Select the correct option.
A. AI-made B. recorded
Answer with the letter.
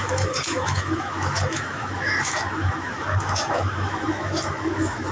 A